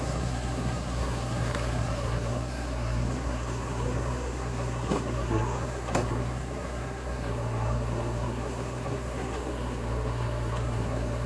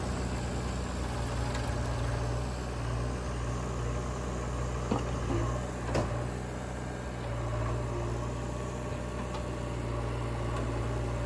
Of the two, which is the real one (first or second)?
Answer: second